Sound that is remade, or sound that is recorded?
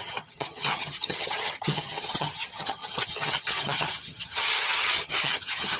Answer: remade